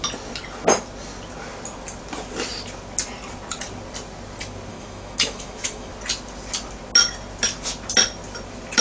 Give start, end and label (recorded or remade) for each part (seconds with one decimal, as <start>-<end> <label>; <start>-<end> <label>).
0.0-4.7 recorded; 4.7-5.9 remade; 5.9-8.8 recorded